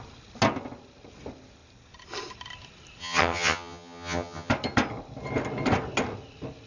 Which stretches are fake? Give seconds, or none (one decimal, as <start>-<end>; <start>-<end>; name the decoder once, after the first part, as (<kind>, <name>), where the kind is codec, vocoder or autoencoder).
3.0-4.5 (vocoder, HiFi-GAN)